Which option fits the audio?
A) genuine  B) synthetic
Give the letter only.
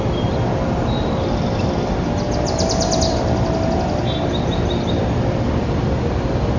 A